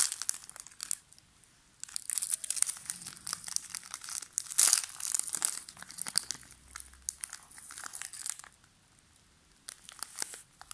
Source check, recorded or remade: recorded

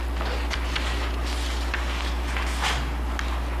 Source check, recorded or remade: recorded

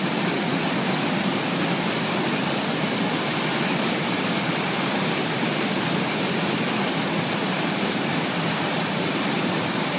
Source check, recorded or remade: recorded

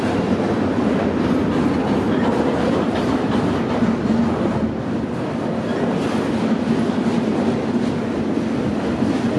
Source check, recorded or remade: recorded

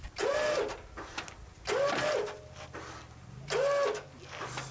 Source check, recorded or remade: recorded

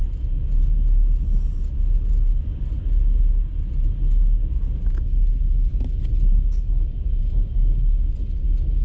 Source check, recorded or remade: recorded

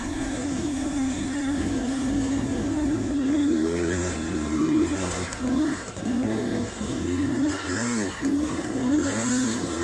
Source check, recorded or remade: remade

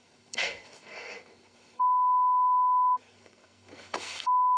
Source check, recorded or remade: remade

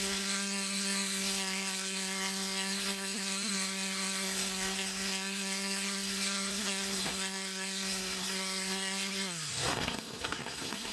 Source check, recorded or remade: remade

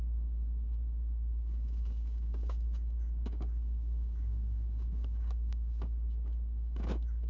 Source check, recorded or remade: remade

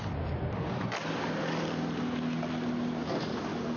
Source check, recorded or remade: recorded